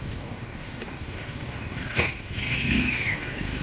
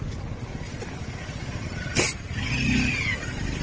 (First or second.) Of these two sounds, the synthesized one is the first